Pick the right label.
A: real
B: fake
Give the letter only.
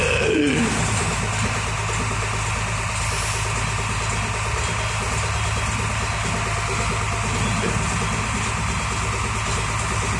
A